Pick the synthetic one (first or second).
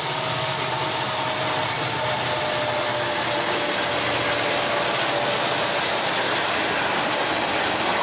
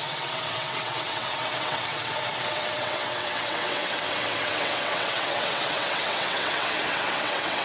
second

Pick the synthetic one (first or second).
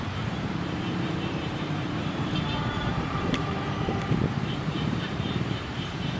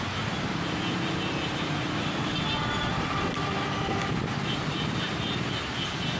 first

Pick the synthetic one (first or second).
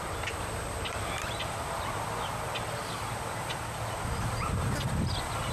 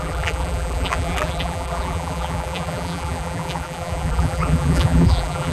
second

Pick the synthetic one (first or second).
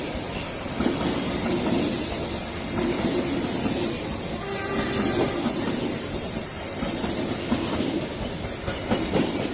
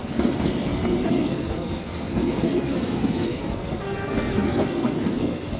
second